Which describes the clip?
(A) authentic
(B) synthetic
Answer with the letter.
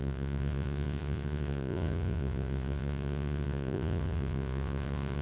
B